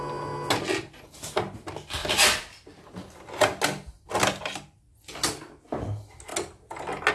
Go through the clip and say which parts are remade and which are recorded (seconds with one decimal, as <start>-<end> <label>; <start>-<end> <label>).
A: 0.0-7.1 recorded